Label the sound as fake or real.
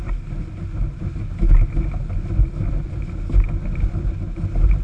real